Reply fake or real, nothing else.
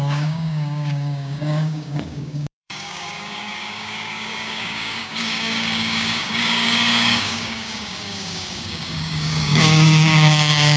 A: fake